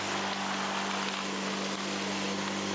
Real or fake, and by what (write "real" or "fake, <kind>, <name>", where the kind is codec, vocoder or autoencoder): real